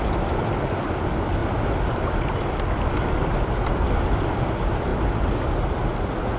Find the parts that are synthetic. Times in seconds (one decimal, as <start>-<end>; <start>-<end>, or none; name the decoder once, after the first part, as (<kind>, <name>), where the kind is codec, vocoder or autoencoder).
none